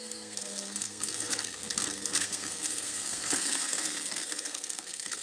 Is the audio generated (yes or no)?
yes